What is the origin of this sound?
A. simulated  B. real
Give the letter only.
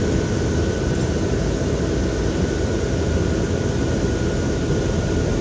B